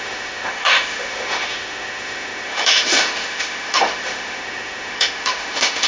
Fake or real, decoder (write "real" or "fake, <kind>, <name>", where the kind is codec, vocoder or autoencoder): fake, autoencoder, DAC-VAE